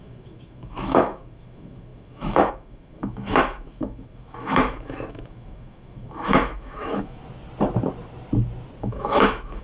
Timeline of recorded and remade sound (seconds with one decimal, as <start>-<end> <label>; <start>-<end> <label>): 0.0-7.2 remade; 7.2-8.8 recorded; 8.8-9.6 remade